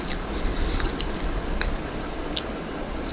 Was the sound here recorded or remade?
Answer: recorded